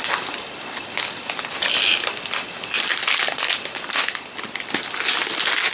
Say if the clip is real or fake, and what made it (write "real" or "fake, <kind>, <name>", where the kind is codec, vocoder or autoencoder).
real